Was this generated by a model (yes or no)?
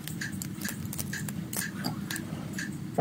no